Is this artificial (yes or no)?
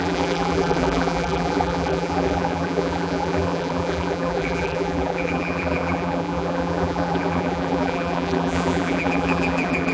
yes